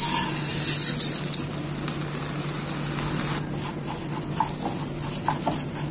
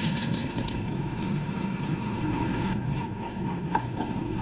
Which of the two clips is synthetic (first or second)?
second